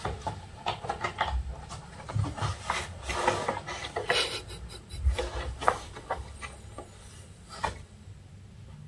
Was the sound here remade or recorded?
recorded